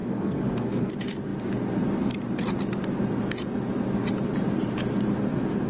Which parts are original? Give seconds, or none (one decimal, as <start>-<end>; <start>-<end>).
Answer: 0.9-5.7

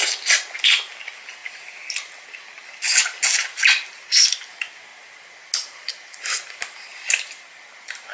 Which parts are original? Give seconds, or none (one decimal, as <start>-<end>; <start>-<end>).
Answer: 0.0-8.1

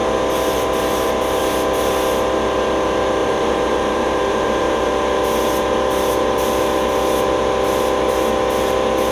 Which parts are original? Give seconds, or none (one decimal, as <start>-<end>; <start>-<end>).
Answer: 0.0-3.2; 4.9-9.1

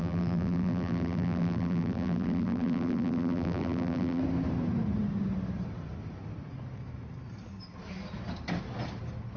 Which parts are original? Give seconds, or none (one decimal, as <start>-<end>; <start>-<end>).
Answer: 4.2-9.4

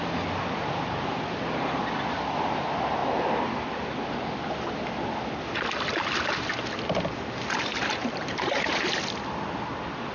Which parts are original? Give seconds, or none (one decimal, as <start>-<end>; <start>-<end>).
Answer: 0.0-8.0; 8.7-10.1

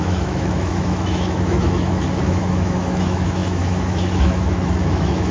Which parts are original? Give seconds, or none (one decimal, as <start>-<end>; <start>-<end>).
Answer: none

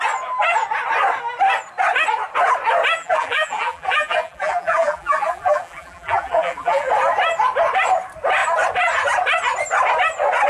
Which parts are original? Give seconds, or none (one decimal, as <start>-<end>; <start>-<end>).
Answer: 0.0-3.0; 6.9-10.5

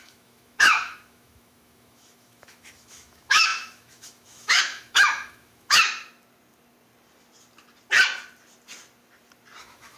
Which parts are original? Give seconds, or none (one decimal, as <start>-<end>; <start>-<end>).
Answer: 5.8-9.6